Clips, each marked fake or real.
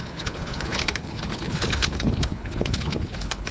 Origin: fake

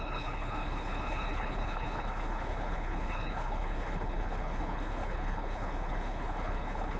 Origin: fake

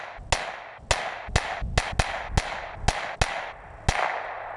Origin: real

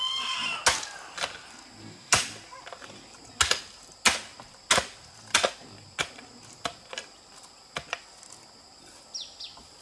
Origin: real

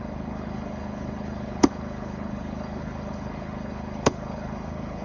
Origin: fake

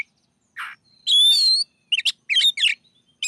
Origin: real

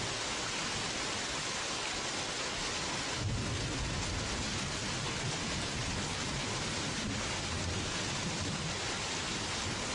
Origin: real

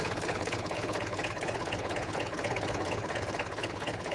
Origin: fake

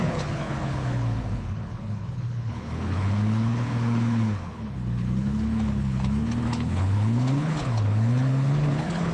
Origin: fake